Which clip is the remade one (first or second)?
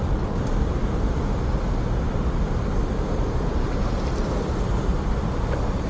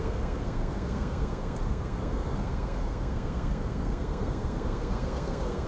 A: second